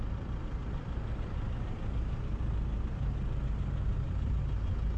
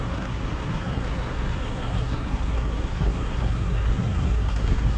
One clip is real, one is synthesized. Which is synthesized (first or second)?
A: second